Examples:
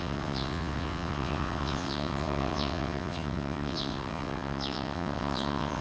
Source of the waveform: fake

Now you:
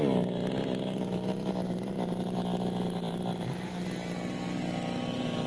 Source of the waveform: real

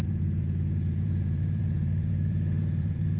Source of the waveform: fake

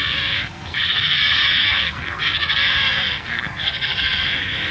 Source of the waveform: fake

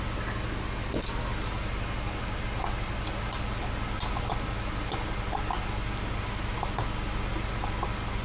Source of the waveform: real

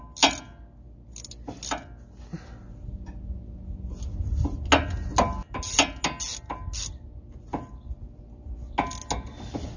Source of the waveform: real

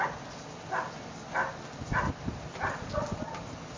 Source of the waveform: real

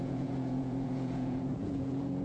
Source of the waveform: fake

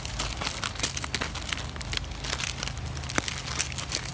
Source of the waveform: real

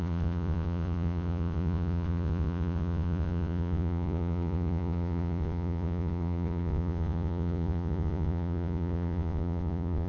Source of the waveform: fake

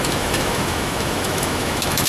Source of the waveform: fake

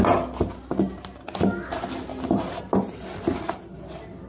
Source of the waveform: real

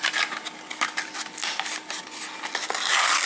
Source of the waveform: real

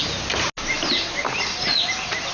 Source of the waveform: real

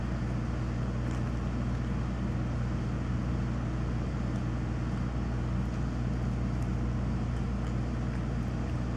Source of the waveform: real